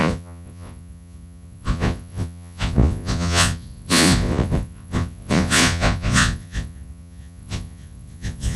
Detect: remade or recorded remade